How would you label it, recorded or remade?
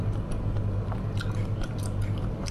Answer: recorded